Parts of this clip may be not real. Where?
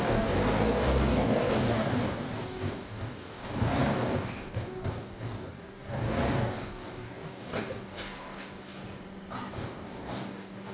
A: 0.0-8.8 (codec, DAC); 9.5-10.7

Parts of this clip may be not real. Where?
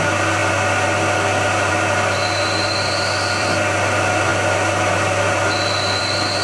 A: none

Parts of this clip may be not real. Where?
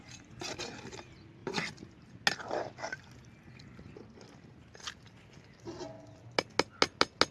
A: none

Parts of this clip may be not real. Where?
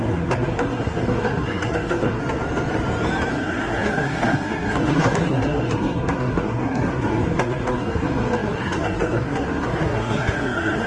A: 0.0-2.2 (codec, SNAC); 3.3-10.9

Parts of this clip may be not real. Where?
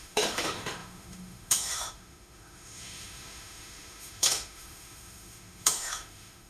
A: 0.0-6.5 (autoencoder, DAC-VAE)